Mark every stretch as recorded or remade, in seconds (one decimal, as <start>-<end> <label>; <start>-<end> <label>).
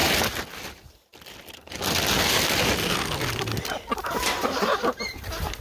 0.0-5.6 recorded